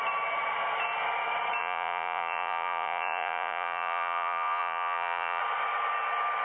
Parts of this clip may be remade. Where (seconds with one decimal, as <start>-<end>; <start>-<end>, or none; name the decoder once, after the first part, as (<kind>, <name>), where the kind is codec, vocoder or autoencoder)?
1.6-5.4 (vocoder, Vocos)